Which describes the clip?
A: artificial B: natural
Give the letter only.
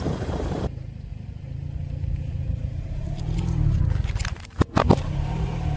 A